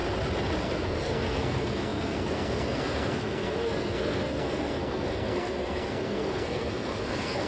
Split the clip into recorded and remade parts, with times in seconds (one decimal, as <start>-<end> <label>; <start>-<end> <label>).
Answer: 0.0-0.6 recorded; 0.6-7.5 remade